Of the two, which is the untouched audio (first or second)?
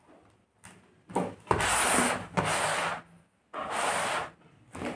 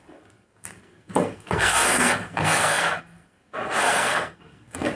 first